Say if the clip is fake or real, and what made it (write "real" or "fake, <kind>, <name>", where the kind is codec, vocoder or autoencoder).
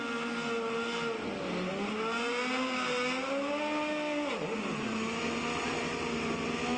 real